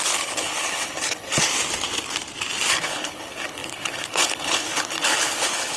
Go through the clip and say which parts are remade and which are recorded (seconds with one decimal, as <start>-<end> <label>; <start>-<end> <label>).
0.0-1.5 remade; 1.5-2.7 recorded; 2.7-5.8 remade